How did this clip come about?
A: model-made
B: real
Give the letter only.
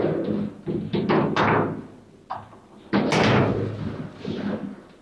B